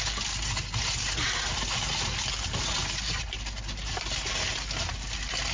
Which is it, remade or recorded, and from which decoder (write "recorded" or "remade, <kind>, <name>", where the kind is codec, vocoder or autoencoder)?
recorded